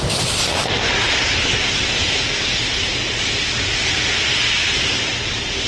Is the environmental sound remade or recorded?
recorded